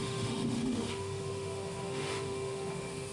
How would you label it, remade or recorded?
remade